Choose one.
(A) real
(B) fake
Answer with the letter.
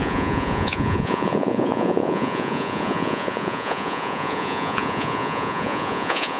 B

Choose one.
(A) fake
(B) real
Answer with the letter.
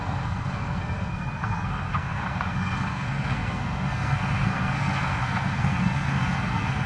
A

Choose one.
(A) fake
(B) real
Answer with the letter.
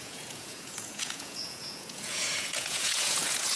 A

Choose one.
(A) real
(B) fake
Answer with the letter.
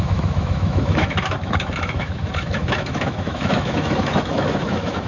B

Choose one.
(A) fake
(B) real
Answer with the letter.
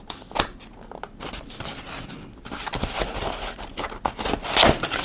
B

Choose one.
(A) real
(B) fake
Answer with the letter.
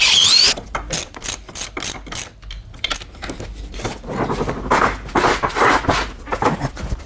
A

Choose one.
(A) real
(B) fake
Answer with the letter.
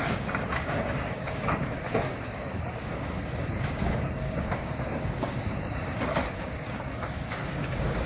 B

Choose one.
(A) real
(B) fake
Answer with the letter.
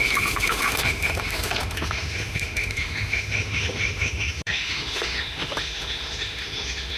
B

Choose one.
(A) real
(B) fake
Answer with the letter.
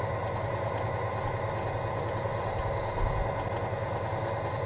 A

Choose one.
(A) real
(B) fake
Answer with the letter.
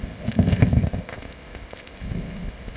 B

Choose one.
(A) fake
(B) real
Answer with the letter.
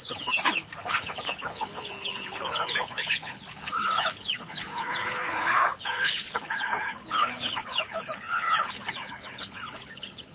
A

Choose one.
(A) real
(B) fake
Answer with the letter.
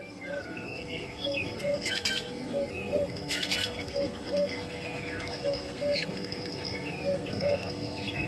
B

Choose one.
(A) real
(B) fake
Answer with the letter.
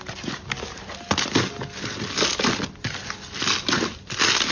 A